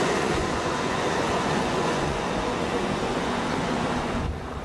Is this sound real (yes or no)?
no